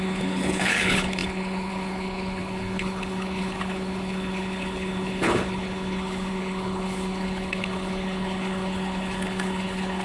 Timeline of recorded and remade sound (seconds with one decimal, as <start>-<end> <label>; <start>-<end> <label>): 0.0-10.0 remade